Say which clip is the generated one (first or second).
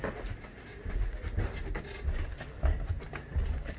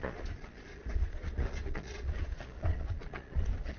second